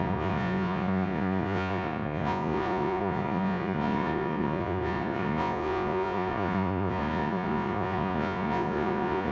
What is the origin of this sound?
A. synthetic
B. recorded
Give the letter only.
A